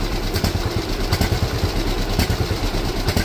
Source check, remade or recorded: remade